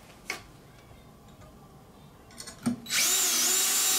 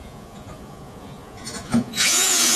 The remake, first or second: second